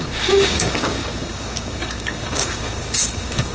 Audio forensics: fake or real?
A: fake